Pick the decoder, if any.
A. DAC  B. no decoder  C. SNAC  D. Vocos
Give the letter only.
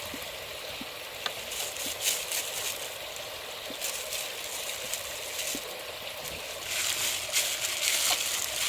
B